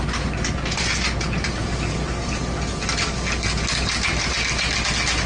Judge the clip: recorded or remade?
recorded